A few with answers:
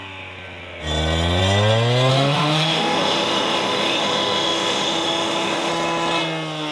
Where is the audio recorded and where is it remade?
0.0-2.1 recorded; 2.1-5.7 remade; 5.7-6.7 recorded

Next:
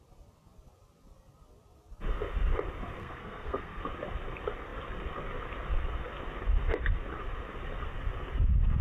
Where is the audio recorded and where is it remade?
0.0-3.0 recorded; 3.0-3.8 remade; 3.8-8.8 recorded